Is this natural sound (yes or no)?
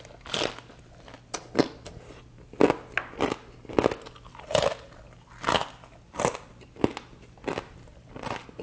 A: yes